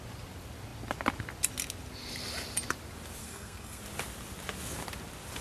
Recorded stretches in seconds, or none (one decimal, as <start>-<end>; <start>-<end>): 0.0-3.2; 3.8-5.4